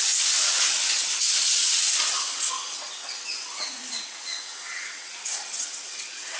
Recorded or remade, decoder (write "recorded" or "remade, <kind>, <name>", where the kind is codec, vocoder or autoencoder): remade, vocoder, WaveNeXt